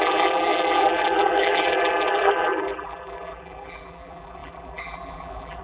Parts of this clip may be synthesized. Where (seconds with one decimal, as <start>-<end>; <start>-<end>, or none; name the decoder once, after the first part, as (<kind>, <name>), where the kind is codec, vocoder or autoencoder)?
0.0-5.6 (vocoder, BigVGAN v2)